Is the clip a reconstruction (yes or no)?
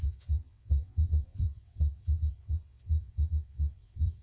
yes